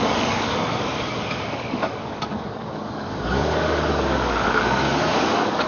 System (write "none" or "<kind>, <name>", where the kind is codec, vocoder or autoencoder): codec, DAC